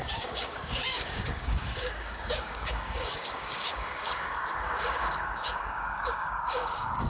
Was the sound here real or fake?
fake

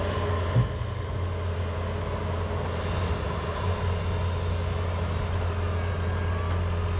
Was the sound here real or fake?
real